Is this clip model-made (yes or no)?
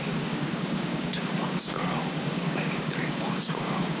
yes